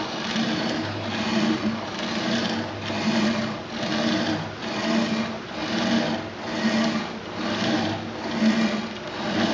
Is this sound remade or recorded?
recorded